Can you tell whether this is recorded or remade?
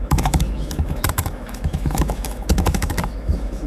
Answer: remade